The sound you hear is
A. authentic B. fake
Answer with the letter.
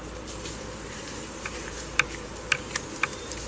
B